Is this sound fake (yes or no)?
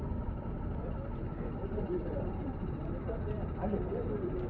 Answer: yes